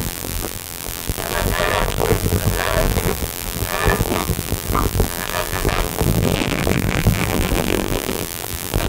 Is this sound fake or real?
fake